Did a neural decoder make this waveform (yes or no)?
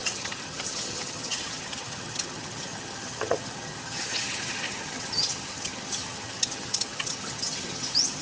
yes